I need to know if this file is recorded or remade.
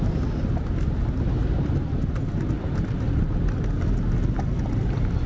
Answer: recorded